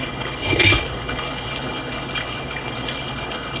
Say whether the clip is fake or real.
fake